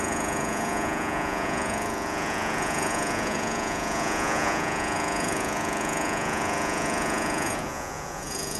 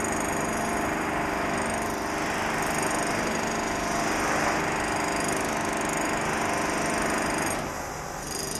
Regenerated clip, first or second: first